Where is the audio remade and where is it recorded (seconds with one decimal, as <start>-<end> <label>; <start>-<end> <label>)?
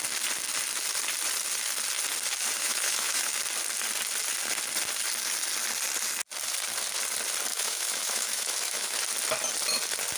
0.0-2.6 recorded; 2.6-3.4 remade; 3.4-7.5 recorded; 7.5-9.0 remade; 9.0-10.2 recorded